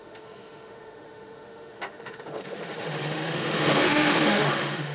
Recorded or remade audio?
remade